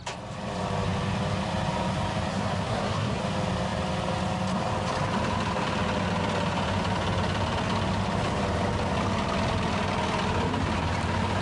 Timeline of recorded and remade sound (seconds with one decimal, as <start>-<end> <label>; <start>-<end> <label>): 0.0-2.3 recorded; 2.3-3.2 remade; 3.2-11.4 recorded